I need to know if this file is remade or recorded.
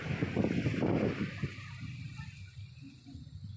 recorded